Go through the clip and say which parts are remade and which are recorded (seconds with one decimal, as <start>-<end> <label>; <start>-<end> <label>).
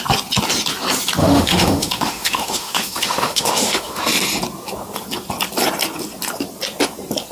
0.0-1.2 recorded; 1.2-4.0 remade; 4.0-7.3 recorded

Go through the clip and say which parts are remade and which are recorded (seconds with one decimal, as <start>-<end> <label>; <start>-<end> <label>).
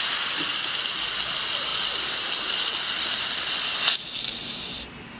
0.0-5.2 recorded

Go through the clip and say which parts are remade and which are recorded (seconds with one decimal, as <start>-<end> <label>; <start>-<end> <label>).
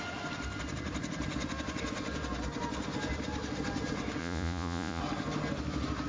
0.0-4.2 recorded; 4.2-5.0 remade; 5.0-6.1 recorded